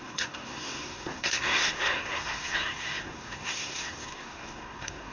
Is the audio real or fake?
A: fake